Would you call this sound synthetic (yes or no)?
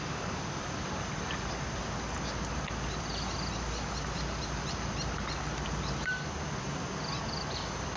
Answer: no